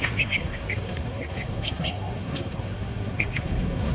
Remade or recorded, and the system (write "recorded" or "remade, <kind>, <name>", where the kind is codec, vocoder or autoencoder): remade, codec, SNAC